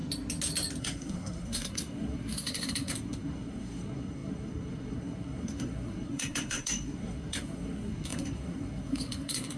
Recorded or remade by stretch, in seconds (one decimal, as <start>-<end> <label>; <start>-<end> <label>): 0.0-0.8 recorded; 0.8-9.6 remade

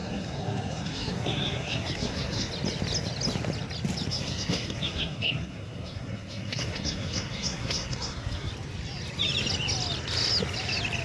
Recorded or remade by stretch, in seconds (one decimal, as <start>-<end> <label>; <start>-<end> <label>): 0.0-2.5 remade; 2.5-4.1 recorded; 4.1-8.5 remade; 8.5-11.0 recorded